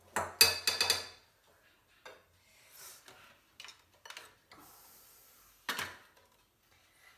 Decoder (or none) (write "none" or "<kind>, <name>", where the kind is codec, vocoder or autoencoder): none